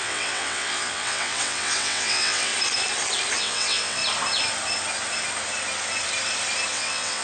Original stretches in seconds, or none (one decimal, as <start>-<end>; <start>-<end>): 2.5-3.4; 4.0-6.7